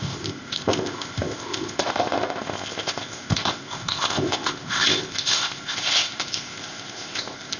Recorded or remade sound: remade